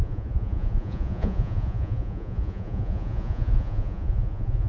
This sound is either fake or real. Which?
fake